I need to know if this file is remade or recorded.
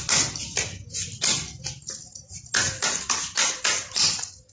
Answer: recorded